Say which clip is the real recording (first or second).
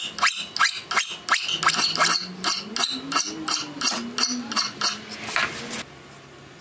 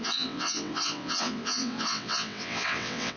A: first